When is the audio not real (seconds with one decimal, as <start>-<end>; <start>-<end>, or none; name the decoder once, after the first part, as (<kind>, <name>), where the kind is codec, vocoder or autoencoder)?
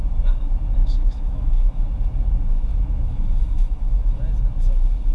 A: 0.8-1.8 (autoencoder, DAC-VAE); 2.7-4.2